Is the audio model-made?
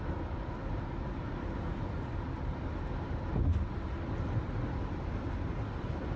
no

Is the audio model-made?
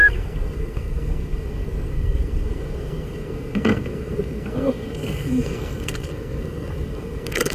yes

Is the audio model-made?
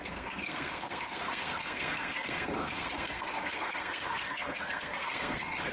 yes